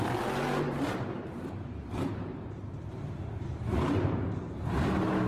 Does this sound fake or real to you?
fake